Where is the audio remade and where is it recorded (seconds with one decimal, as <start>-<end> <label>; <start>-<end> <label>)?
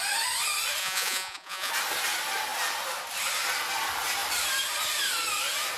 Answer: 0.0-0.8 recorded; 0.8-1.7 remade; 1.7-5.8 recorded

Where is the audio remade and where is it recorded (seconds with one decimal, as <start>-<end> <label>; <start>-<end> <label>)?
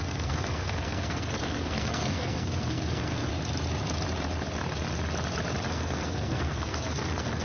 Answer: 0.0-3.3 remade; 3.3-5.7 recorded; 5.7-7.4 remade